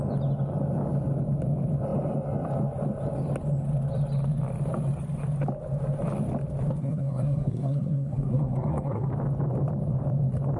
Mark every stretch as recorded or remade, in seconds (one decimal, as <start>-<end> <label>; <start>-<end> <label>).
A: 0.0-6.8 recorded; 6.8-9.1 remade; 9.1-10.6 recorded